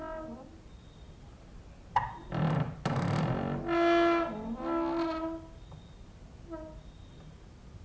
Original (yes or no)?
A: yes